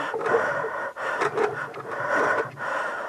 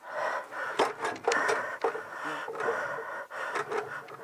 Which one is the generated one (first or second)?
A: first